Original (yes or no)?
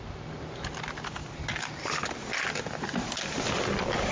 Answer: yes